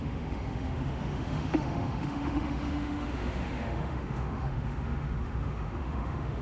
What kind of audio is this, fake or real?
fake